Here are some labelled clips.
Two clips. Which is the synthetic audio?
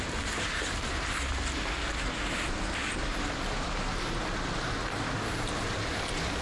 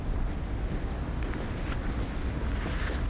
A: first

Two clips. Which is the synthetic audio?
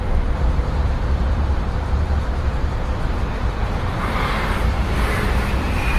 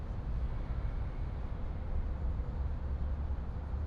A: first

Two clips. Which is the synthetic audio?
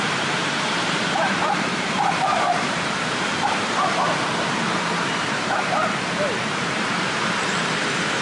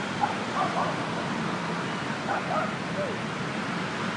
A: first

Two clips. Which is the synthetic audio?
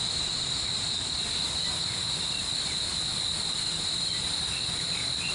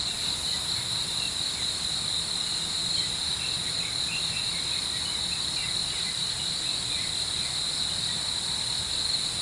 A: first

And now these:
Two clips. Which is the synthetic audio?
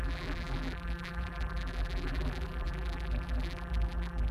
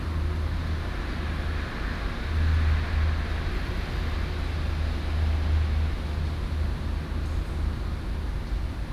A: first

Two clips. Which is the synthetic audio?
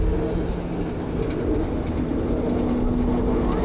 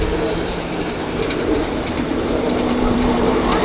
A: second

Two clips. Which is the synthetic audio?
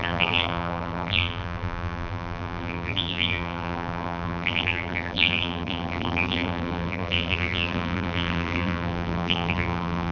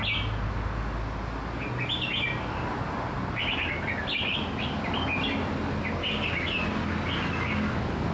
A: first